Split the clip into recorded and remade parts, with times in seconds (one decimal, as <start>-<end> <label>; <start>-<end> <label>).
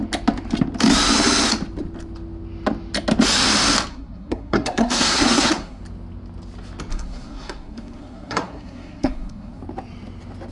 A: 0.0-3.9 recorded; 3.9-5.8 remade; 5.8-6.9 recorded; 6.9-9.6 remade; 9.6-10.5 recorded